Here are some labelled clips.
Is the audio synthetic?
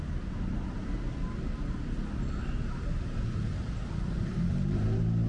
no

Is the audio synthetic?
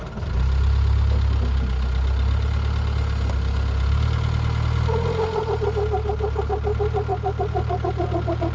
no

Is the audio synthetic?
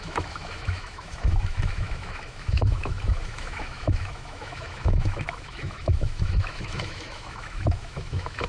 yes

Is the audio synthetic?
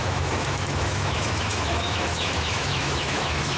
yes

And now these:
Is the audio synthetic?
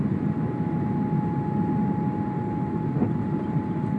no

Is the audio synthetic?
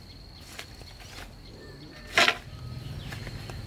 no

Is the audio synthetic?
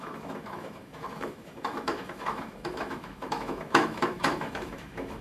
yes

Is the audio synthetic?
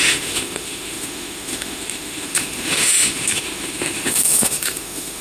yes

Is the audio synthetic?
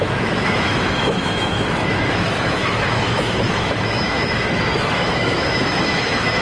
yes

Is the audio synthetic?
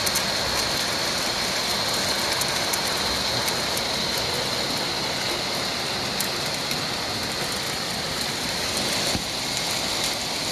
no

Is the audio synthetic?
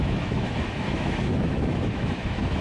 yes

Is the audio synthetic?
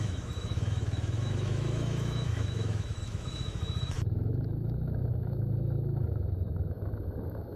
yes